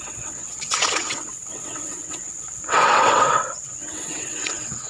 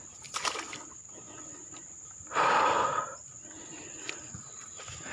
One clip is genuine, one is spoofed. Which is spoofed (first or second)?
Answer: first